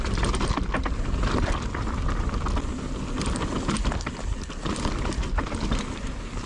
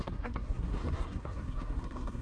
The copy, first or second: second